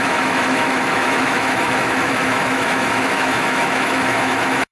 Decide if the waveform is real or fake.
fake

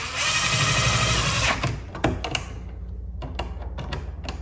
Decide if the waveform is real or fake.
real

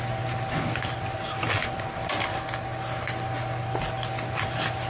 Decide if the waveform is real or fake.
real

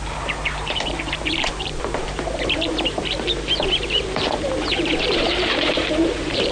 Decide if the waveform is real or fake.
fake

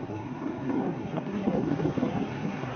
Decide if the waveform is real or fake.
fake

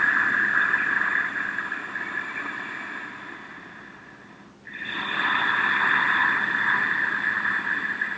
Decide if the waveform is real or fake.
real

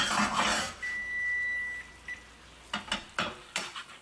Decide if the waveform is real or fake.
real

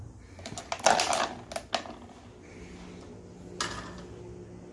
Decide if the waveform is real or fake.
real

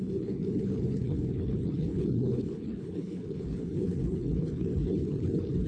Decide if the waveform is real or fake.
fake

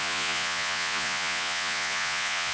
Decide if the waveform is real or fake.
fake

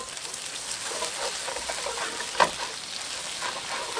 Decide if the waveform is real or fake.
real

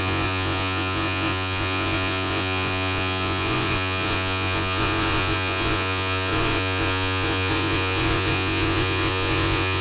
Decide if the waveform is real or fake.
fake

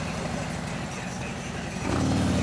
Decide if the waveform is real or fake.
real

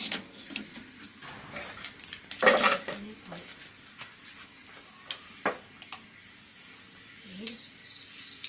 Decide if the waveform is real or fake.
real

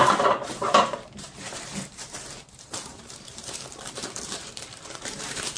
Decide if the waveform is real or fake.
fake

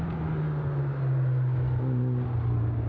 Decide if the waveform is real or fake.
real